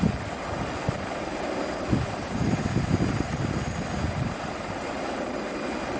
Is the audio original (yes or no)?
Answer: yes